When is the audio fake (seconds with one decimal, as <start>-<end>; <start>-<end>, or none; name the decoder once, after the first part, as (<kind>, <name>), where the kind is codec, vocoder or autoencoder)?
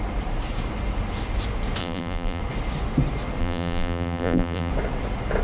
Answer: 1.8-2.4 (vocoder, BigVGAN v2); 3.4-4.7